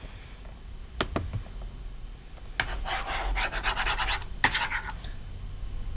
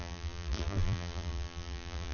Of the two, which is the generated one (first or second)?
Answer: second